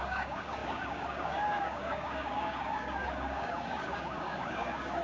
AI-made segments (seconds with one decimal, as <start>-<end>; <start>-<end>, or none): 0.0-5.0